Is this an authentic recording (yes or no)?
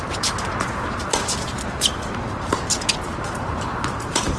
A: no